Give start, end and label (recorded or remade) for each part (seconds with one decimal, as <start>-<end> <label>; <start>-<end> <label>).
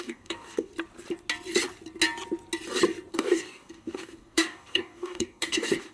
0.0-0.7 remade; 0.7-3.1 recorded; 3.1-5.9 remade